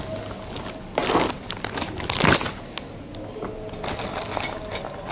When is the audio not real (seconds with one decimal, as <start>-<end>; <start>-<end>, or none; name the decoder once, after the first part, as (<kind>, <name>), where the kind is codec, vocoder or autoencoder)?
none